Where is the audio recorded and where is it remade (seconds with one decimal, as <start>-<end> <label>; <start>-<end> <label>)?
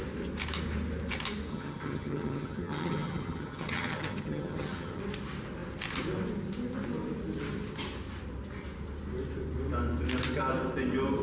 0.0-1.5 recorded; 1.5-5.0 remade; 5.0-11.2 recorded